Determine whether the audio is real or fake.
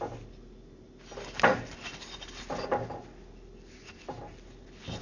real